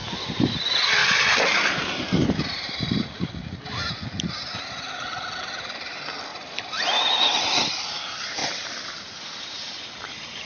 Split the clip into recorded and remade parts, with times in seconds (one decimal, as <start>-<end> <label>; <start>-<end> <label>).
0.0-1.0 recorded; 1.0-3.3 remade; 3.3-6.3 recorded; 6.3-7.4 remade; 7.4-8.4 recorded; 8.4-9.8 remade; 9.8-10.5 recorded